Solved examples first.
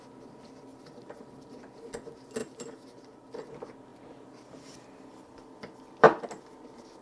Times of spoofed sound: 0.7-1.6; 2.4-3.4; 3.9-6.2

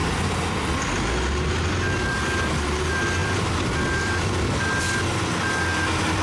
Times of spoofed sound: 3.2-4.8

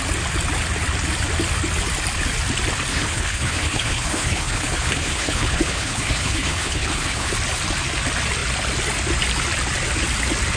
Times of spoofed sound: 2.9-7.3

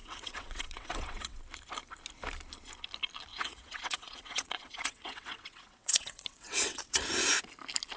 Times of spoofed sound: 0.0-1.4; 3.3-7.0

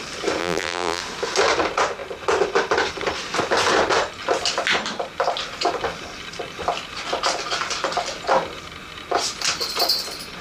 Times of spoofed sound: 0.4-1.0

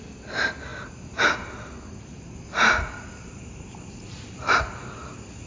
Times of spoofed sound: none